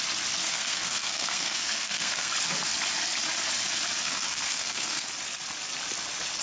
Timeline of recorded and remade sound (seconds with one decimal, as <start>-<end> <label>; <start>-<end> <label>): 0.0-0.4 recorded; 0.4-2.3 remade; 2.3-4.0 recorded; 4.0-5.1 remade; 5.1-6.4 recorded